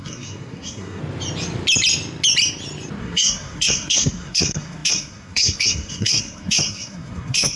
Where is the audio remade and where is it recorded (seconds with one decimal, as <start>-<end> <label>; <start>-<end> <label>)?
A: 0.0-1.0 remade; 1.0-3.0 recorded; 3.0-7.6 remade